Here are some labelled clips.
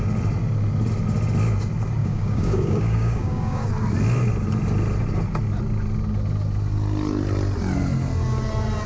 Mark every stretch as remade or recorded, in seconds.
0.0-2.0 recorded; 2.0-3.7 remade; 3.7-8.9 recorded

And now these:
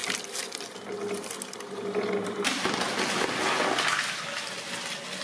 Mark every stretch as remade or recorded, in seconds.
0.0-5.2 recorded

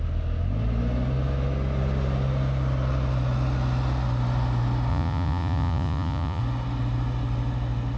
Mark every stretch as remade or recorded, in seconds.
0.0-4.9 recorded; 4.9-6.4 remade; 6.4-8.0 recorded